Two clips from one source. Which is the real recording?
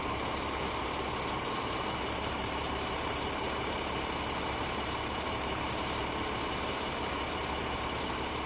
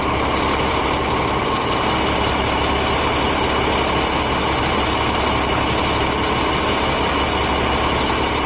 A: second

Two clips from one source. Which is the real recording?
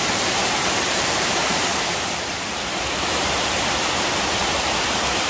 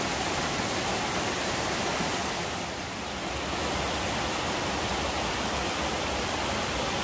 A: second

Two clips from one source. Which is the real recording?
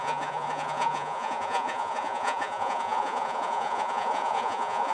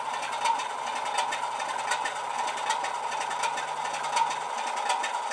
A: second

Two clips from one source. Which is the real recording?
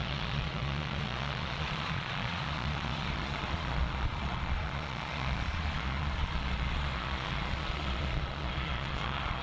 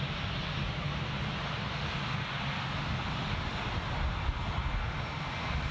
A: second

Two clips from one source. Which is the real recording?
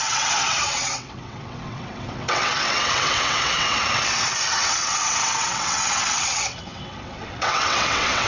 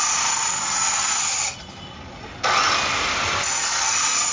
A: second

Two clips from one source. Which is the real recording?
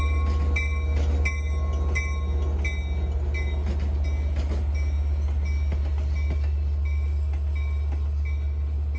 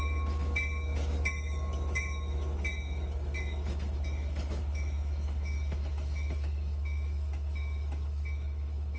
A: first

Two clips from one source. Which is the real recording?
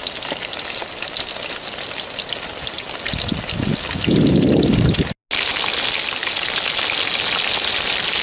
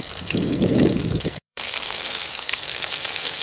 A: first